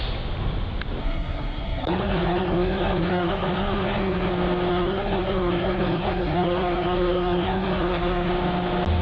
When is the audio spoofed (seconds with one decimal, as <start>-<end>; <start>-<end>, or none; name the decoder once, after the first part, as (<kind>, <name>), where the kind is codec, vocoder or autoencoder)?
1.0-4.3 (codec, SNAC); 4.7-8.3